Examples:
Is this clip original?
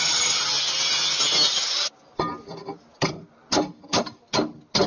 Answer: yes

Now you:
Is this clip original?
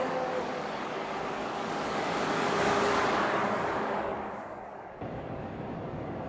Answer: no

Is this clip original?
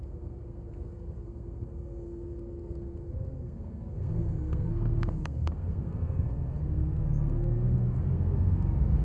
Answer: no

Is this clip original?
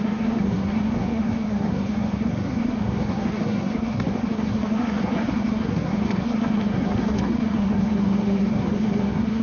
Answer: no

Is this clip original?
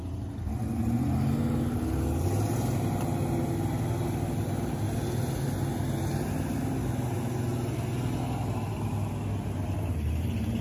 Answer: yes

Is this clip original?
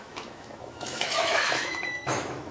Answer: no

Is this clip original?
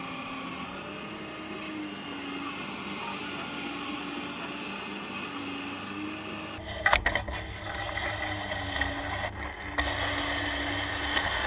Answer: yes